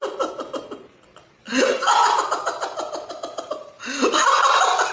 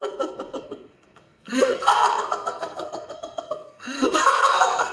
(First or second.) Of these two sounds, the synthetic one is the second